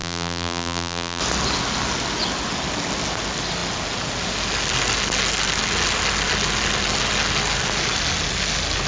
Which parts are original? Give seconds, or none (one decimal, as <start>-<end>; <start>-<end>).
1.2-8.9